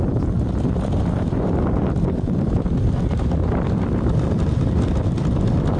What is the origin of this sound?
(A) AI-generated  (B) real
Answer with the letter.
B